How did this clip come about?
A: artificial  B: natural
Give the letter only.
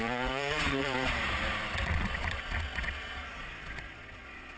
A